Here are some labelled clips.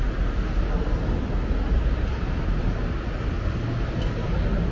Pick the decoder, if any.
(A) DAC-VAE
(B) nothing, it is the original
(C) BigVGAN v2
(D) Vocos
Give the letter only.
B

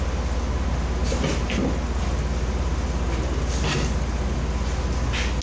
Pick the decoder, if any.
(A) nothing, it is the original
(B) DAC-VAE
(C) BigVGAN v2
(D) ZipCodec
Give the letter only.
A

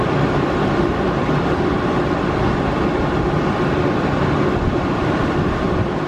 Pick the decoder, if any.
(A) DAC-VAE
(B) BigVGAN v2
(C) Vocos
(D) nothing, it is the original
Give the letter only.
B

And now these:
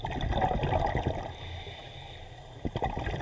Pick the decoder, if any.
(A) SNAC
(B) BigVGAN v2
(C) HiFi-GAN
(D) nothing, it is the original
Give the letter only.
D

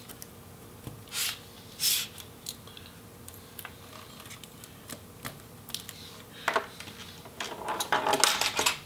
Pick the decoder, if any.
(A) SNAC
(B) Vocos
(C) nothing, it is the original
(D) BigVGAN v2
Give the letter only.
C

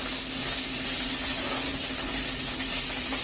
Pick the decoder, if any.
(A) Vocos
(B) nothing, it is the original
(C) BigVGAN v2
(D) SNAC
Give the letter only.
B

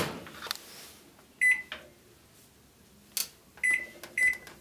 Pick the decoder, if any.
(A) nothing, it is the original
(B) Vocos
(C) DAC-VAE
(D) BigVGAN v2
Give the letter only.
A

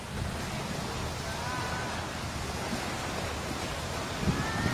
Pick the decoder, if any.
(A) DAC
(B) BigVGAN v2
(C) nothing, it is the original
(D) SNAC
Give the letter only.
C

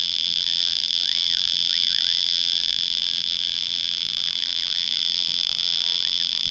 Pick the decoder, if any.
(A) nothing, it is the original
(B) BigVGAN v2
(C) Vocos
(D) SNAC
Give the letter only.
B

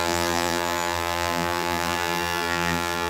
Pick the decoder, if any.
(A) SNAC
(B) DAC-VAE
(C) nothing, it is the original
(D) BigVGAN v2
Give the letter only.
D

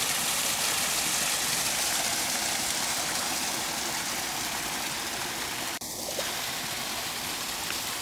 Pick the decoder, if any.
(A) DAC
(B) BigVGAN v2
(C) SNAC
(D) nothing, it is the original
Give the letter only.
D